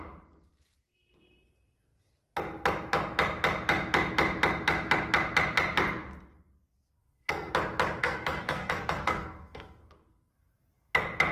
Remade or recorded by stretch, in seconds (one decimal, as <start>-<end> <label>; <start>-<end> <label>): 0.0-7.0 recorded; 7.0-7.5 remade; 7.5-8.0 recorded; 8.0-10.3 remade; 10.3-11.3 recorded